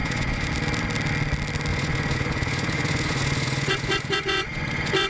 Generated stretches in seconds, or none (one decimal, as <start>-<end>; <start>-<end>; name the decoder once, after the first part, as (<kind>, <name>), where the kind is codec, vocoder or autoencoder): 0.0-0.5 (vocoder, Vocos); 1.7-5.1